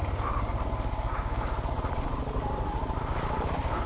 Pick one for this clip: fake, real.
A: real